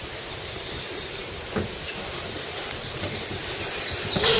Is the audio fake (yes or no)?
yes